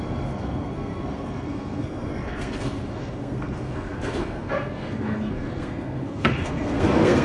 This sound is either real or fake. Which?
fake